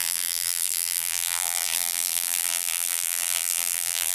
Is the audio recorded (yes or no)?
no